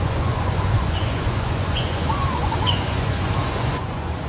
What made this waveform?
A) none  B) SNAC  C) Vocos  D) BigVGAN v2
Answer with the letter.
C